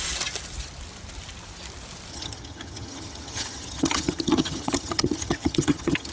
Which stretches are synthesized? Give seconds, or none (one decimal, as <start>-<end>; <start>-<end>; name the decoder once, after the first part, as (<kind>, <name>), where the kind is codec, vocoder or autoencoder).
2.1-6.1 (vocoder, HiFi-GAN)